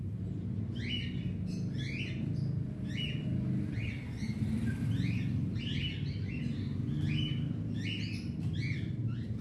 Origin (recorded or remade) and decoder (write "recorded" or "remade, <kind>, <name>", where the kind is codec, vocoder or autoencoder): recorded